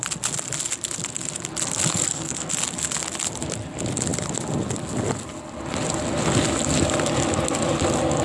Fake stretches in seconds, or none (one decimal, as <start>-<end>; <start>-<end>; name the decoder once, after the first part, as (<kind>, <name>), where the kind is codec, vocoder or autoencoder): 1.9-2.5 (codec, SNAC)